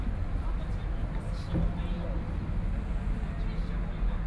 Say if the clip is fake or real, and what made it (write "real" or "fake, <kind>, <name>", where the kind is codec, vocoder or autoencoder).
real